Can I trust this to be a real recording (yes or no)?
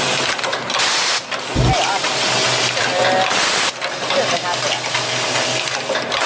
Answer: yes